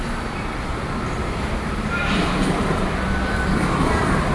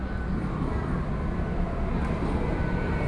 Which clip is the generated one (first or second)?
first